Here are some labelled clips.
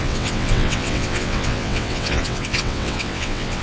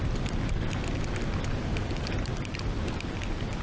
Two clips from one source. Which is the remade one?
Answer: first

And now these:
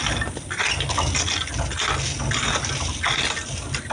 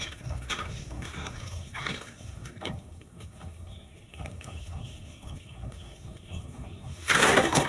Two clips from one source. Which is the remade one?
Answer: second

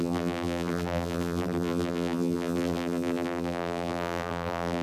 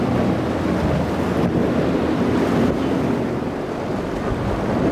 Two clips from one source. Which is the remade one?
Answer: first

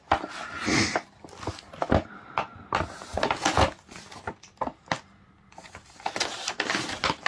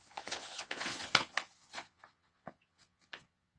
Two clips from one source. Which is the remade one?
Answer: second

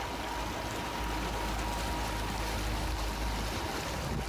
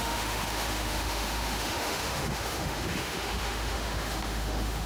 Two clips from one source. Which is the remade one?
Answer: second